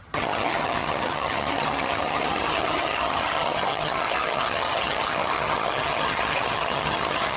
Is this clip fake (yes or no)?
yes